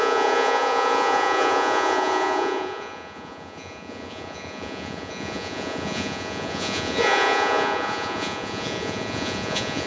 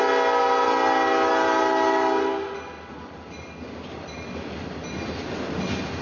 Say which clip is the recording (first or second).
second